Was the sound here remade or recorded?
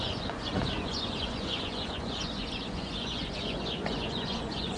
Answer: remade